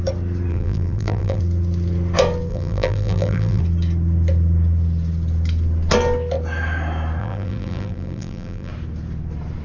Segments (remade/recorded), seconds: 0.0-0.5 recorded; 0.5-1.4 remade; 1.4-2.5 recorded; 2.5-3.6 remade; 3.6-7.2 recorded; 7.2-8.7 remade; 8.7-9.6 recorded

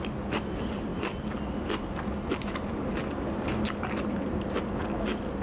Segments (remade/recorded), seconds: 0.0-5.4 recorded

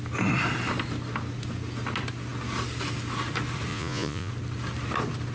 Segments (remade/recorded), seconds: 0.0-3.7 recorded; 3.7-4.3 remade; 4.3-5.3 recorded